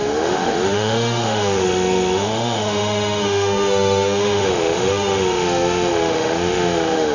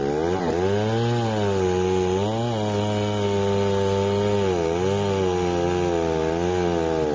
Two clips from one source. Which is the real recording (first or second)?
second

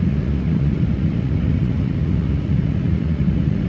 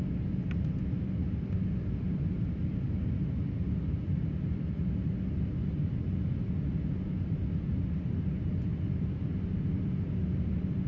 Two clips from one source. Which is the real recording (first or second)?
second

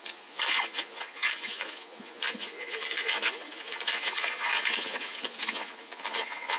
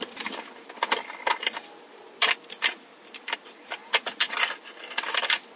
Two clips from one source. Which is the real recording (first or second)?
second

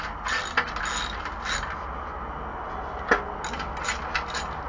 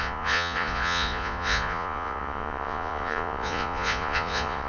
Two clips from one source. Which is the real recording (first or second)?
first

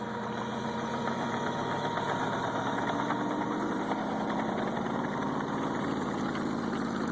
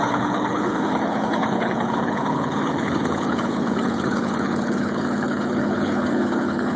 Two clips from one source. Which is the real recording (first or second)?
first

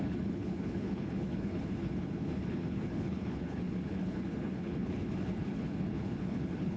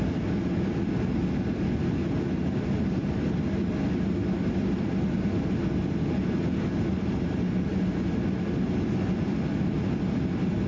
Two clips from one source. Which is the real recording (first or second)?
second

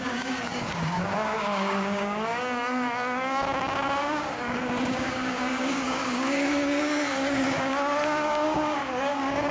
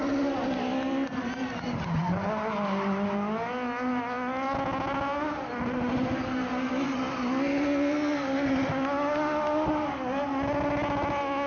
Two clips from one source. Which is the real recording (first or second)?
second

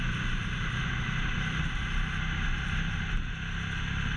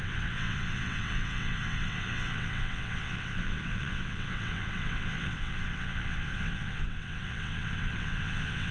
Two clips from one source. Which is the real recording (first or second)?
first